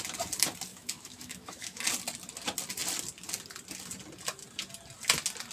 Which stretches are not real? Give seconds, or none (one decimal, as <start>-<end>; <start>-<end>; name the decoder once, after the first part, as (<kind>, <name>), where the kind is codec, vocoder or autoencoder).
0.7-1.8 (autoencoder, DAC-VAE)